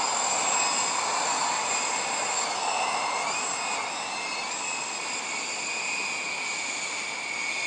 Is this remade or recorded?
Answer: recorded